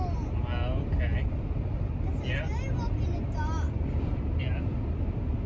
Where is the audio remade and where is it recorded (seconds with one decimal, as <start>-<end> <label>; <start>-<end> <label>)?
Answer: 0.0-5.5 recorded